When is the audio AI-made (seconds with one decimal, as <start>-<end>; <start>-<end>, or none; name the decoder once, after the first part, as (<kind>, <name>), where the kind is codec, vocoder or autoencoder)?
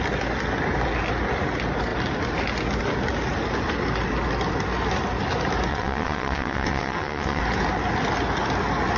5.7-7.4 (vocoder, WaveNeXt)